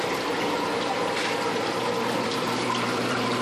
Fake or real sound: fake